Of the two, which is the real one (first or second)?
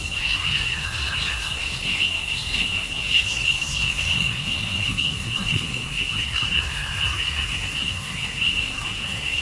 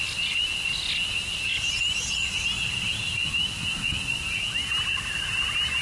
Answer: second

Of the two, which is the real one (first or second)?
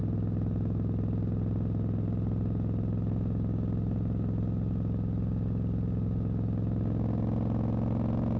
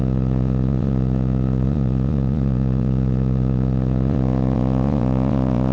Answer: first